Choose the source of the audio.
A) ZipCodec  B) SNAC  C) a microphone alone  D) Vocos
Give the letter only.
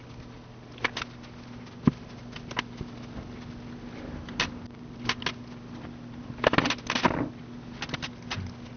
C